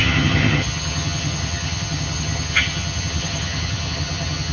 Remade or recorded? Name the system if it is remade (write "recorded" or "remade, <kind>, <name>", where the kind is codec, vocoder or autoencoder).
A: remade, vocoder, HiFi-GAN